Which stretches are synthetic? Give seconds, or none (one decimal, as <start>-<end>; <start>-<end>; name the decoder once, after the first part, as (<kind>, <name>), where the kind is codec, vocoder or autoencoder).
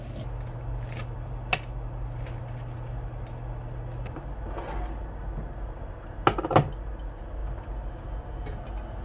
none